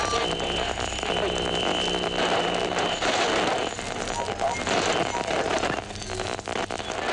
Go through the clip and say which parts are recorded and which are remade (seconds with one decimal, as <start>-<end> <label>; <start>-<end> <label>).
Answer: 0.0-7.1 recorded